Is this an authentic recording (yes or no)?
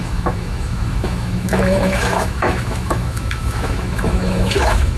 no